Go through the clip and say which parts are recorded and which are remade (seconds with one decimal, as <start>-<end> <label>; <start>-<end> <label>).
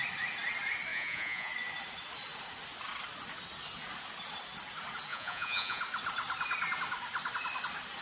0.0-0.9 recorded; 0.9-1.5 remade; 1.5-5.1 recorded; 5.1-5.8 remade; 5.8-8.0 recorded